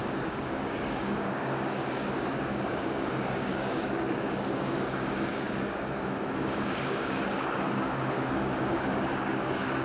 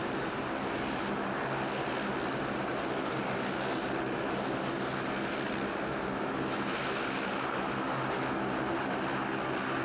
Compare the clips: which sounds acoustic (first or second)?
second